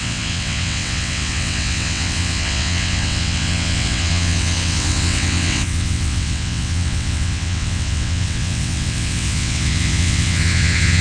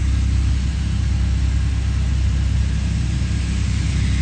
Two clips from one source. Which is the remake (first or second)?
first